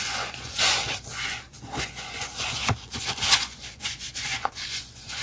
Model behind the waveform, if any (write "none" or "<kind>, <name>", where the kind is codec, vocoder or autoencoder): vocoder, Vocos